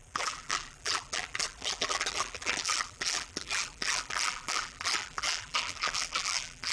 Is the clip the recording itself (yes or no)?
no